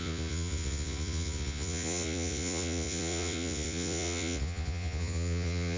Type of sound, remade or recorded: remade